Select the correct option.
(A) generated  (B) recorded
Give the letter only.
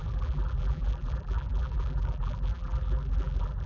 A